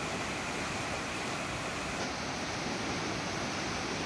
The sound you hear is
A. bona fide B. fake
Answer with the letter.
A